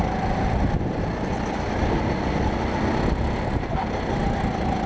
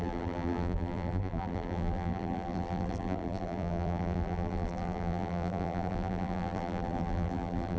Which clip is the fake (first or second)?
second